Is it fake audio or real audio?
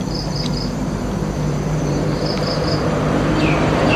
fake